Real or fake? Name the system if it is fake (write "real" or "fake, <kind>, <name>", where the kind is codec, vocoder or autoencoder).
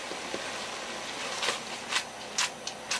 real